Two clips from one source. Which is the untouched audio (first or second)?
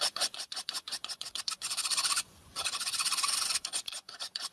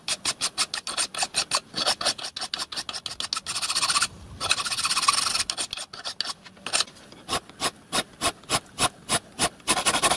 second